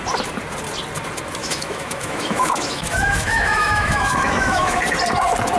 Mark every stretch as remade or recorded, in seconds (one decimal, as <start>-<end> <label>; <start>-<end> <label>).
0.0-1.4 recorded; 1.4-4.8 remade; 4.8-5.6 recorded

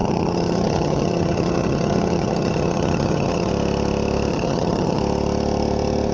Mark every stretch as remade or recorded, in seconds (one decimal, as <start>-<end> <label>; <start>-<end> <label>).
0.0-3.5 remade; 3.5-4.3 recorded; 4.3-5.0 remade; 5.0-6.1 recorded

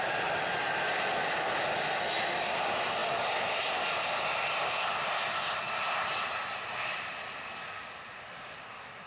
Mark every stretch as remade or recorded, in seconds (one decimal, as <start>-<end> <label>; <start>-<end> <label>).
0.0-9.1 recorded

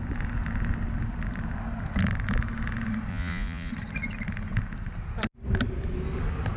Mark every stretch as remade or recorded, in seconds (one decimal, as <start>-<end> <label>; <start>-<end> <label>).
0.0-3.1 recorded; 3.1-3.7 remade; 3.7-6.6 recorded

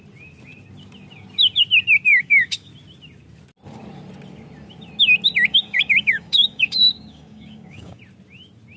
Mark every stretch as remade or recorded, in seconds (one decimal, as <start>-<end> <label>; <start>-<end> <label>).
0.0-2.1 recorded; 2.1-2.7 remade; 2.7-5.5 recorded; 5.5-8.0 remade; 8.0-8.8 recorded